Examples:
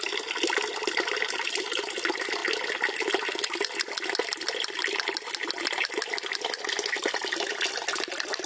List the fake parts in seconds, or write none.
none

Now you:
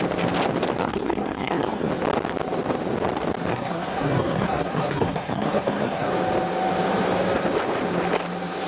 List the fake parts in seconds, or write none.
0.8-1.9 (codec, SNAC); 3.5-6.1